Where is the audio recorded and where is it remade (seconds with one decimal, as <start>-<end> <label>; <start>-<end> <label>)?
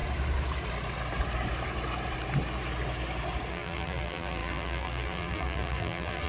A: 0.0-3.5 recorded; 3.5-6.3 remade